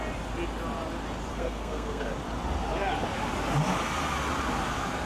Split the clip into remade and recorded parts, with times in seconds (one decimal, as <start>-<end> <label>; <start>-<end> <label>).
0.0-1.3 recorded; 1.3-2.1 remade; 2.1-5.1 recorded